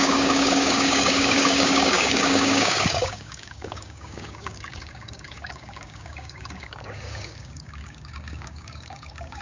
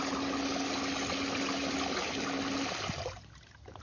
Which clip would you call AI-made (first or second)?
first